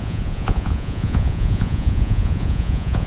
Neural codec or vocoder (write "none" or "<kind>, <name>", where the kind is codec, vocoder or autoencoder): vocoder, Vocos